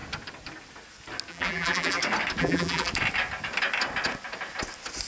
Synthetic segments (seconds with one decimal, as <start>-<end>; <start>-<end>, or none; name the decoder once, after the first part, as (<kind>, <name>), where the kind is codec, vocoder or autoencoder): 1.3-2.0 (vocoder, BigVGAN v2); 2.4-2.9

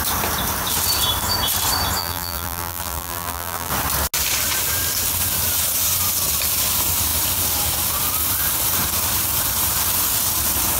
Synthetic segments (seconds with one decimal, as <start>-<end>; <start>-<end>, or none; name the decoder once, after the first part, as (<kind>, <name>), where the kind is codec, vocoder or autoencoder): 2.0-3.7 (vocoder, BigVGAN v2)

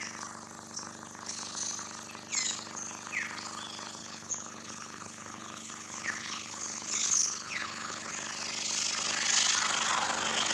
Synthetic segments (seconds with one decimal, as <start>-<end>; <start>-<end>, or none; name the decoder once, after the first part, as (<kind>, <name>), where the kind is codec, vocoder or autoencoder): 4.0-8.1 (codec, HILCodec)

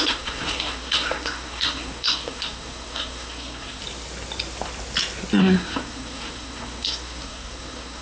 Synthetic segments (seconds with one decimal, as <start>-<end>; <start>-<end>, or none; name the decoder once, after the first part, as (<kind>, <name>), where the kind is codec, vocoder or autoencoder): 0.0-3.8 (codec, SNAC); 5.4-8.0

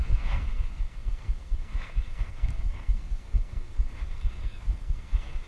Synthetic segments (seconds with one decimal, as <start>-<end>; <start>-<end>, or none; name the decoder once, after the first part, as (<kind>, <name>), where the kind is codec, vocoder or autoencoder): 0.0-5.5 (codec, SNAC)